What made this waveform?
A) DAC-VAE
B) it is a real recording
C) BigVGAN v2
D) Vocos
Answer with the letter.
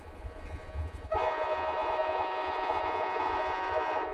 D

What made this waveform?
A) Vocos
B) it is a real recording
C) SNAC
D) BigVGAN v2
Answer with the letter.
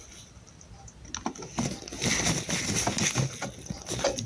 B